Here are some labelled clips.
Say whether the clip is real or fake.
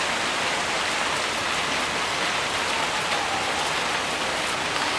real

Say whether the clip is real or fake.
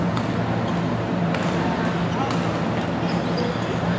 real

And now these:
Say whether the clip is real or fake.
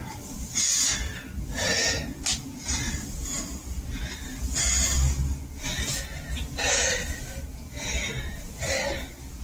real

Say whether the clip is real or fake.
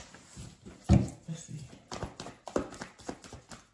real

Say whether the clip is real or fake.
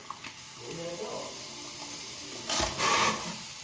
real